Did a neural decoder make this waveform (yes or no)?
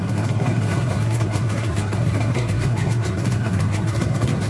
yes